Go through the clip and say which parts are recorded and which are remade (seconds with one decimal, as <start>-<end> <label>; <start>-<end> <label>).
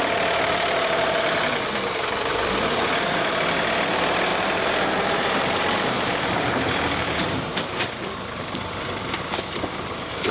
0.0-2.3 recorded; 2.3-3.3 remade; 3.3-4.3 recorded; 4.3-9.1 remade; 9.1-10.3 recorded